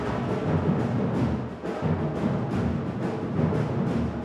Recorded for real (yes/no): yes